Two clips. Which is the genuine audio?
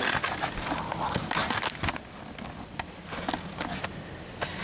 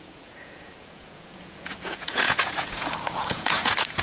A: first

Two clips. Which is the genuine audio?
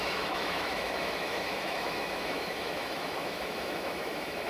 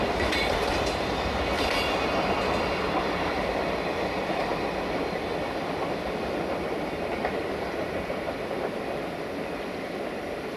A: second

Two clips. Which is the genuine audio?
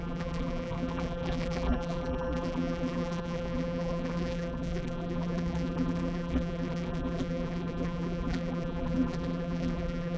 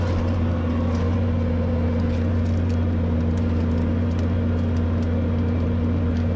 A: second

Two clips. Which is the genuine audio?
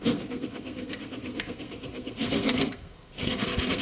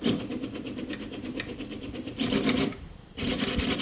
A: second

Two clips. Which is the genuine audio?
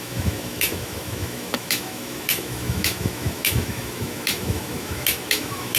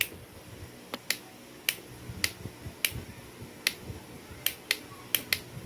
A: second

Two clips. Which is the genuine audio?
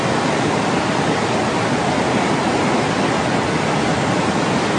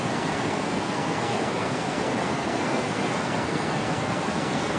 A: first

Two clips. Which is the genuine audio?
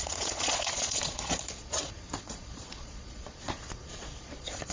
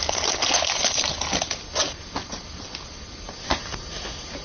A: second